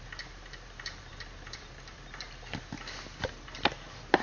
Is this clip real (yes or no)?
no